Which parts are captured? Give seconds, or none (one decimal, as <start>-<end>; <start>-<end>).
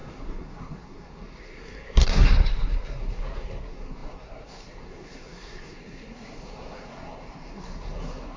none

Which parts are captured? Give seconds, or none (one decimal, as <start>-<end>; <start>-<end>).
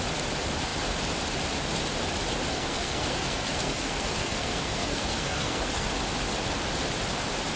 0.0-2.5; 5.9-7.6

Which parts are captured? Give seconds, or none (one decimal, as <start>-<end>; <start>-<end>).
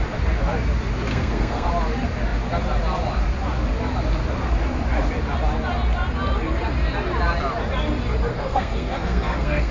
0.0-1.1; 1.7-8.3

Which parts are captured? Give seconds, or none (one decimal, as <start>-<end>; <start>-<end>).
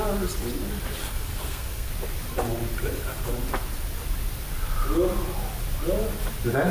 0.0-1.0; 1.9-6.7